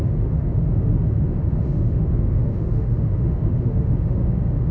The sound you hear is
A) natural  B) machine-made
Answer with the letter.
B